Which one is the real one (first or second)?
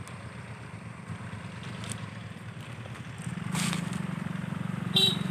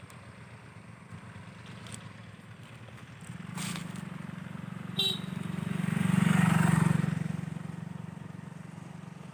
second